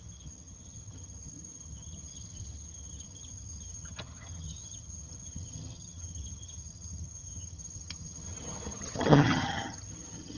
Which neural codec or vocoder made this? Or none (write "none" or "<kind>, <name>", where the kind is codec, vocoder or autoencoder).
vocoder, HiFi-GAN